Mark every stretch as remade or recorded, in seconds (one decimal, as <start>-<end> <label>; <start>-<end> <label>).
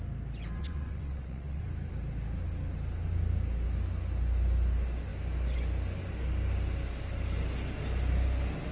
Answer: 0.0-0.6 recorded; 0.6-1.6 remade; 1.6-8.7 recorded